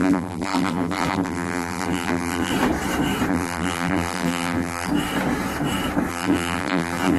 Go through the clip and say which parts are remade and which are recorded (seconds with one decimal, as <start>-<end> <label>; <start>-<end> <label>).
0.0-2.5 remade; 2.5-3.3 recorded; 3.3-4.9 remade; 4.9-6.1 recorded; 6.1-7.2 remade